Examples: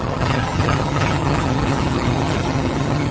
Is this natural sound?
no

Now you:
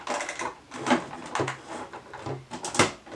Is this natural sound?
yes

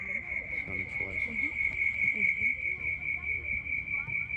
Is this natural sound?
no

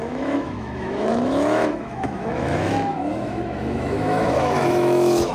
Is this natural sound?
no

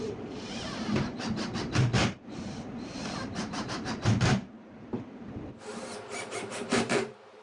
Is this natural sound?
no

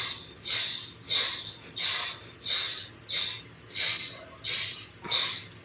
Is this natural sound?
yes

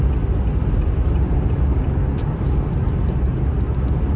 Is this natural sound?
yes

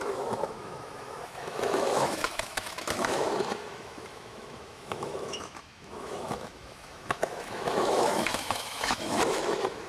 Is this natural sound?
no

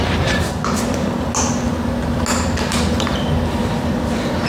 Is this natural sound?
yes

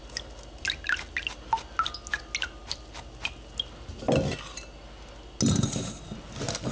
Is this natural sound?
yes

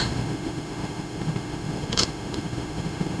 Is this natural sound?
no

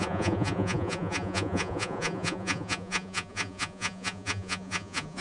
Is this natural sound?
no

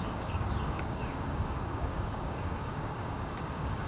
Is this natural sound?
no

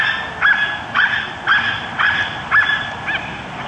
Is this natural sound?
yes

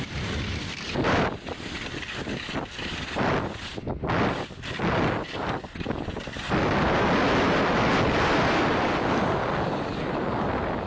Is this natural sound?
yes